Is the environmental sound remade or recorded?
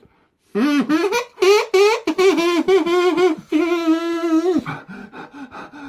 recorded